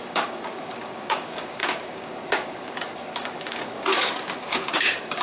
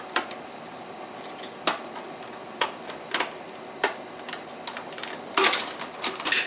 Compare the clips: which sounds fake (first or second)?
first